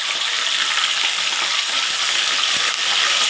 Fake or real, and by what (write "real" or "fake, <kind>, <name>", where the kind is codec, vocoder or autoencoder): fake, vocoder, BigVGAN v2